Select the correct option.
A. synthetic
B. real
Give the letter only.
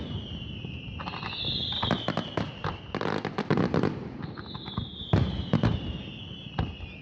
B